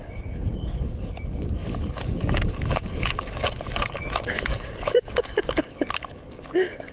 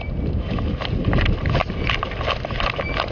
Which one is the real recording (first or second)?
second